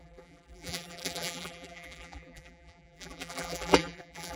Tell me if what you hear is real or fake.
fake